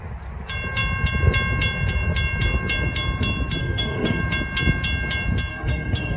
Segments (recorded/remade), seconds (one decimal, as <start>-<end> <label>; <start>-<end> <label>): 0.0-3.6 recorded; 3.6-4.2 remade; 4.2-5.5 recorded; 5.5-6.2 remade

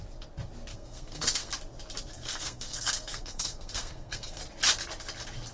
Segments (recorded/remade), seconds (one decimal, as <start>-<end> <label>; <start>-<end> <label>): 0.0-0.7 recorded; 0.7-1.5 remade; 1.5-2.1 recorded; 2.1-4.4 remade; 4.4-5.5 recorded

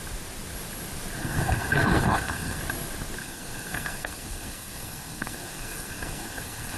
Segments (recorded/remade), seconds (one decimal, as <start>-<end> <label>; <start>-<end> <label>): 0.0-1.2 recorded; 1.2-2.6 remade; 2.6-3.2 recorded; 3.2-6.8 remade

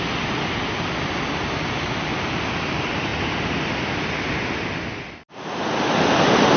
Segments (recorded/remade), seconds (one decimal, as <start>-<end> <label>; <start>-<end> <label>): 0.0-6.6 recorded

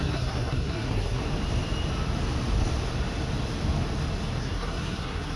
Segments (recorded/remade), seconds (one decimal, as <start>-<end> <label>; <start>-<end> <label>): 0.0-1.2 remade; 1.2-4.4 recorded; 4.4-5.4 remade

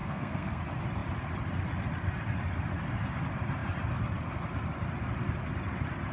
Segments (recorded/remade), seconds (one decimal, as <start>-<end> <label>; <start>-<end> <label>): 0.0-0.6 remade; 0.6-6.1 recorded